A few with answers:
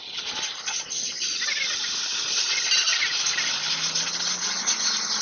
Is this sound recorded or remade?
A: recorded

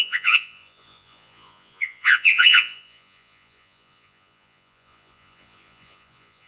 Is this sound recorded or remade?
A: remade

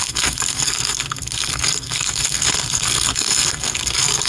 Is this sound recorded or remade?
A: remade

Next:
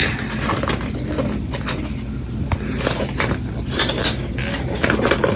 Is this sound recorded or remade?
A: recorded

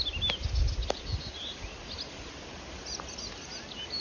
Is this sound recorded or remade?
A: recorded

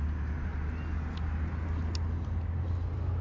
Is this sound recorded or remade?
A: recorded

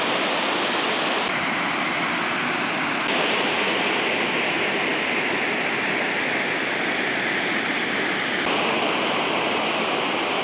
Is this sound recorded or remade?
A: recorded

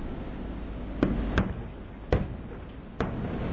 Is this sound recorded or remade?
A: recorded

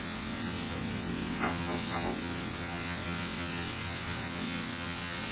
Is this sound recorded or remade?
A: remade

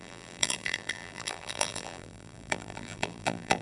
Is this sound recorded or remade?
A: remade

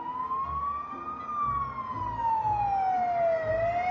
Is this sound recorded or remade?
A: recorded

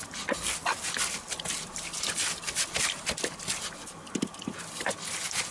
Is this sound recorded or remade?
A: recorded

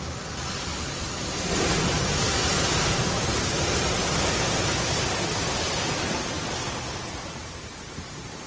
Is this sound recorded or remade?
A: recorded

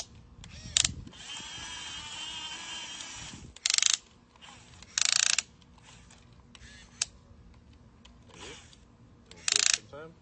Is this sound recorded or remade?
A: recorded